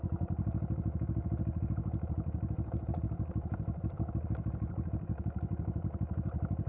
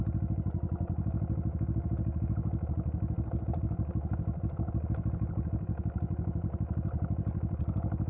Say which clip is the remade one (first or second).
first